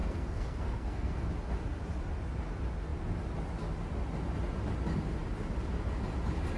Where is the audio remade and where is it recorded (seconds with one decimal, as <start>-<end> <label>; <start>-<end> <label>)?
0.0-1.3 remade; 1.3-6.6 recorded